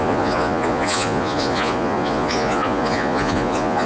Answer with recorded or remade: remade